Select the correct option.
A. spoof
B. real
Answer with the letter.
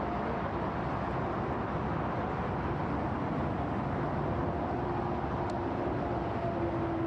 B